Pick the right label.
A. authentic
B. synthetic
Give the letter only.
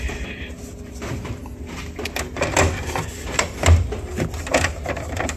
A